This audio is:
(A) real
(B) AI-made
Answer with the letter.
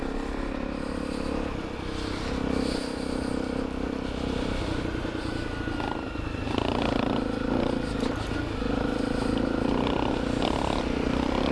A